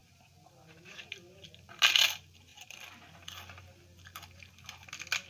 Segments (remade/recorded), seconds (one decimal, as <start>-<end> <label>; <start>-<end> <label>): 0.0-5.3 recorded

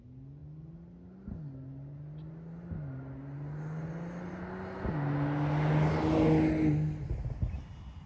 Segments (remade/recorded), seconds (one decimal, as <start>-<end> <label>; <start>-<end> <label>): 0.0-8.1 recorded